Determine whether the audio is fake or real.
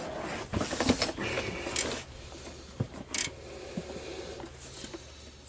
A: real